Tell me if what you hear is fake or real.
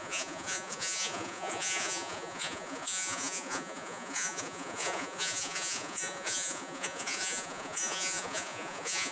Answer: fake